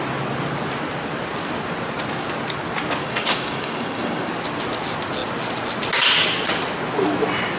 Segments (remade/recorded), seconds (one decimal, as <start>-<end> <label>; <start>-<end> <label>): 0.0-3.0 recorded; 3.0-4.3 remade; 4.3-7.6 recorded